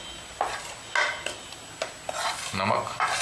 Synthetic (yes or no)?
no